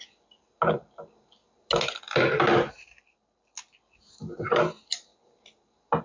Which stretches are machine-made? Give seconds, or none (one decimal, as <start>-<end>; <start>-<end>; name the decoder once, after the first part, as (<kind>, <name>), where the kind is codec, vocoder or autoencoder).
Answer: none